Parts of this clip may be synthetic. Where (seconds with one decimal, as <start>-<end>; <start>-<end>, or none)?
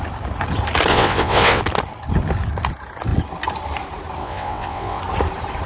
0.9-1.6; 4.2-5.0